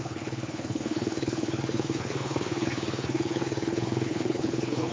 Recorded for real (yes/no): no